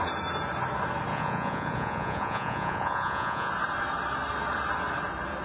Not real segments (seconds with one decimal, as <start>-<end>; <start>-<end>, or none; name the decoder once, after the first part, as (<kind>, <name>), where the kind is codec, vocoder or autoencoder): 1.1-3.5 (vocoder, Vocos)

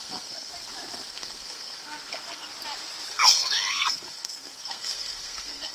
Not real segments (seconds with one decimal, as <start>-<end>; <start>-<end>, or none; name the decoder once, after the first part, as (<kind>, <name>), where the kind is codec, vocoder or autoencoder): 0.0-0.5 (codec, SNAC); 1.1-2.5; 3.1-5.7

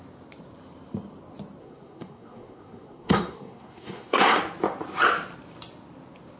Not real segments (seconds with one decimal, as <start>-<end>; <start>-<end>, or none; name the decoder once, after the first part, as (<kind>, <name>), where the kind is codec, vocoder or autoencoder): 1.6-4.4 (codec, SNAC)